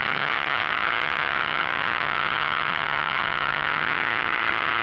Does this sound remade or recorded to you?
remade